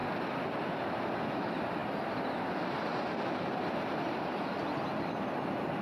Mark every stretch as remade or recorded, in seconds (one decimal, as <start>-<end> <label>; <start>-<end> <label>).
0.0-5.8 recorded